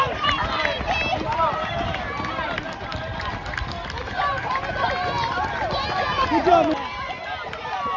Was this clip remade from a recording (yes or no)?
no